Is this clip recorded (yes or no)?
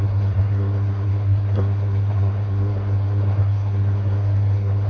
no